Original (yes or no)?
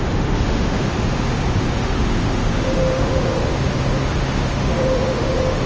no